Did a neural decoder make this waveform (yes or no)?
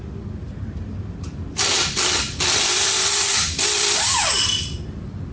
no